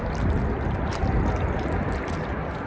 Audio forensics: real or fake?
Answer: real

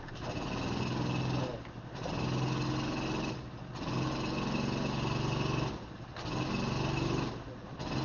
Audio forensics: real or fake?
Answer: real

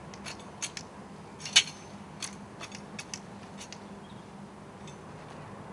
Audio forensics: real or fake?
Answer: real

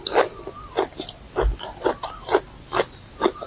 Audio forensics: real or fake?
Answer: real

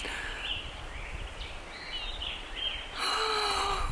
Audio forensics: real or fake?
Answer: real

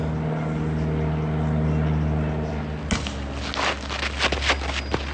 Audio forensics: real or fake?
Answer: real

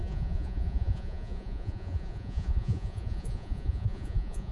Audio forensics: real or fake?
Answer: fake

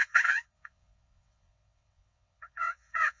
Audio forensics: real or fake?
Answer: fake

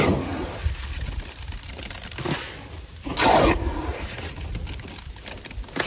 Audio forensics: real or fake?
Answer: real